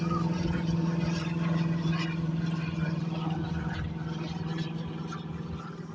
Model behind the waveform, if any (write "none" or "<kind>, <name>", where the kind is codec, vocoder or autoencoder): vocoder, BigVGAN v2